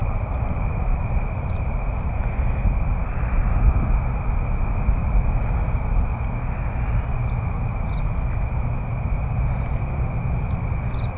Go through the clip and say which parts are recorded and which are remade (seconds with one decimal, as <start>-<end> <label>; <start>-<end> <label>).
0.0-3.2 remade; 3.2-11.2 recorded